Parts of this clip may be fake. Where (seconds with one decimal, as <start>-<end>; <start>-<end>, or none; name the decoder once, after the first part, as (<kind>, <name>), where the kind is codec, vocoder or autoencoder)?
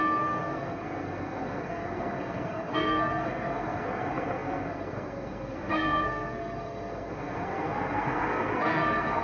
0.0-9.2 (codec, SNAC)